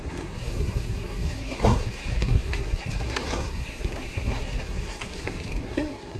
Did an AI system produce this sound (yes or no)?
yes